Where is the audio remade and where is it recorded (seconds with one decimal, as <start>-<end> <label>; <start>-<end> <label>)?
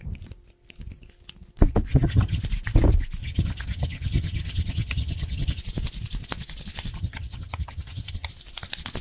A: 0.0-1.9 recorded; 1.9-2.4 remade; 2.4-3.2 recorded; 3.2-5.6 remade; 5.6-6.9 recorded; 6.9-8.3 remade; 8.3-9.0 recorded